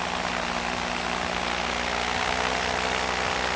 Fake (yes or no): no